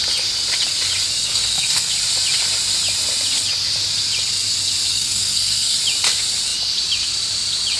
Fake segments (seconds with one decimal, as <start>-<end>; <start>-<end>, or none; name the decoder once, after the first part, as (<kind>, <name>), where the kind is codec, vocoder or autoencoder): 1.2-1.9 (codec, SNAC); 4.9-5.8